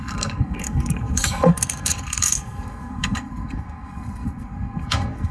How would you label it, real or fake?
fake